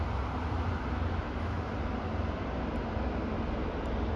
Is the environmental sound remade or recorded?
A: recorded